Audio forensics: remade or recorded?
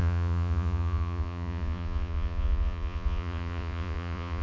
remade